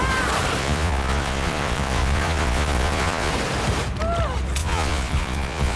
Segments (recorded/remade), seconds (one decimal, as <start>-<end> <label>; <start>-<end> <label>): 0.0-0.6 recorded; 0.6-3.3 remade; 3.3-4.6 recorded; 4.6-5.8 remade